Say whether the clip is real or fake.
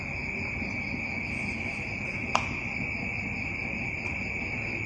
real